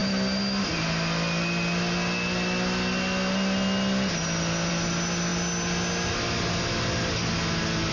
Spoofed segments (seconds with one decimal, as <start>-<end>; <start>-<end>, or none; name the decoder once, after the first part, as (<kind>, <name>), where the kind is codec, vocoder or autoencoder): none